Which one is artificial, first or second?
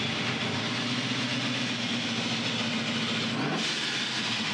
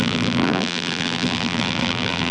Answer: second